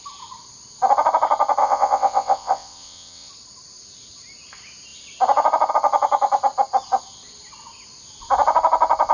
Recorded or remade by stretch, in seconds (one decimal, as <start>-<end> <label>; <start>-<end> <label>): 0.0-1.6 recorded; 1.6-3.3 remade; 3.3-9.1 recorded